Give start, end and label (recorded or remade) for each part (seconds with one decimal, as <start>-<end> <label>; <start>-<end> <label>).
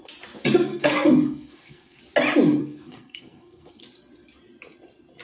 0.0-0.7 recorded; 0.7-2.0 remade; 2.0-2.6 recorded; 2.6-3.8 remade; 3.8-5.2 recorded